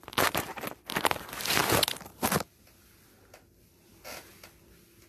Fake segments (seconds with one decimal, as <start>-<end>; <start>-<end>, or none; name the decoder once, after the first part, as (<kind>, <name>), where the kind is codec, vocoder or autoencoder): none